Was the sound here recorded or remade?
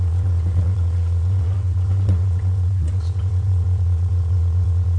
remade